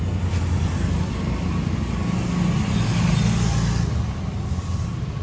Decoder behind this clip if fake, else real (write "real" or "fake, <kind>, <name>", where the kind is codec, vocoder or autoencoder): real